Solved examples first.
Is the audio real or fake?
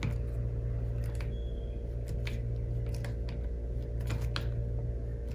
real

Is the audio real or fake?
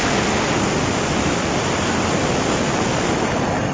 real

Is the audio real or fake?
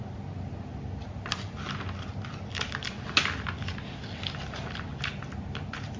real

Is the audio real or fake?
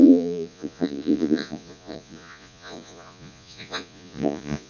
fake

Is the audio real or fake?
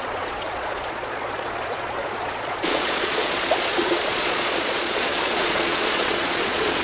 fake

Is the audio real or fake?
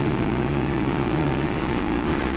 fake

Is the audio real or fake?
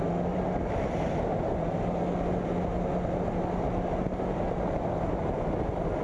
real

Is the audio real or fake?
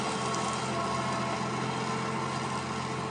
real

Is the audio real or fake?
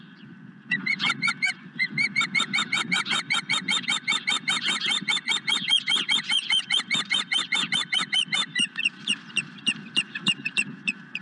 fake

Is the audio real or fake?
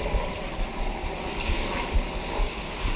real